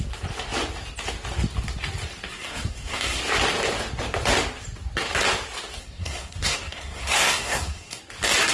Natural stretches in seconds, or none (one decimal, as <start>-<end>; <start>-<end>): 0.0-2.4; 3.2-5.8; 8.0-8.5